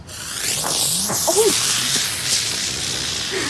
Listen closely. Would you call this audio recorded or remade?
recorded